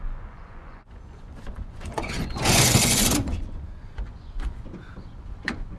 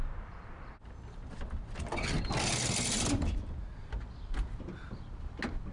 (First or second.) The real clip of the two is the second